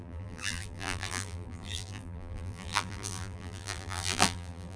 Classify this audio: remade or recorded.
remade